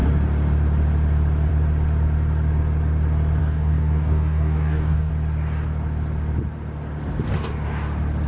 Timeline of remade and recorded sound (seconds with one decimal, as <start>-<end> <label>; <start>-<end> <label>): 0.0-3.4 recorded; 3.4-5.1 remade; 5.1-8.3 recorded